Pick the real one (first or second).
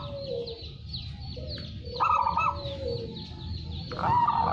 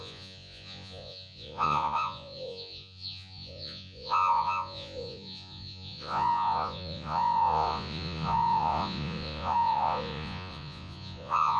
first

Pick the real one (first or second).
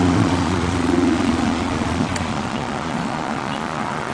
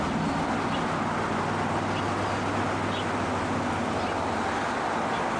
second